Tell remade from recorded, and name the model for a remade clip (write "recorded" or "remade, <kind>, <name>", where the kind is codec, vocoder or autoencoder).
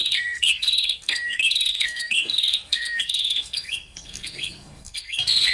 remade, codec, SNAC